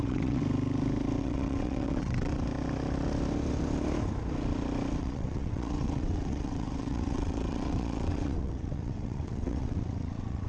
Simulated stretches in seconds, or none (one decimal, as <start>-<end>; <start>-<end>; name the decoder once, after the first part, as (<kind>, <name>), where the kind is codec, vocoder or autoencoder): 0.0-0.4 (vocoder, WaveNeXt); 1.2-2.3; 5.0-10.5